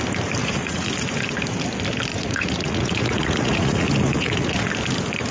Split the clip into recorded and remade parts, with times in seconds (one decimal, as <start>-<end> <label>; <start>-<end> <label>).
0.0-0.4 recorded; 0.4-0.9 remade; 0.9-2.1 recorded; 2.1-4.7 remade; 4.7-5.3 recorded